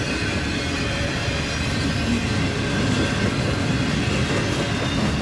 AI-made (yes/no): no